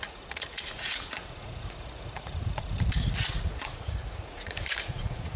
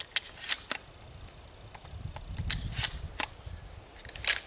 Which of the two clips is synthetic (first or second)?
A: first